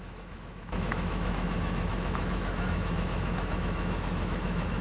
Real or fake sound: fake